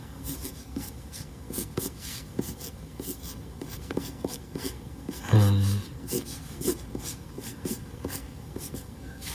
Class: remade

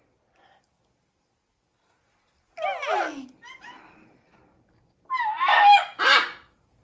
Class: recorded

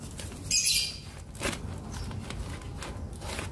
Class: recorded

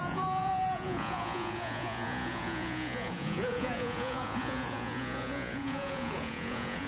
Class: remade